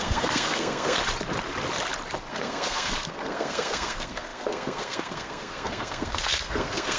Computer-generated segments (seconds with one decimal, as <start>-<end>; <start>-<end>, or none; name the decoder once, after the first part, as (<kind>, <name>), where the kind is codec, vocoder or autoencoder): 0.0-1.0 (codec, SNAC); 2.3-7.0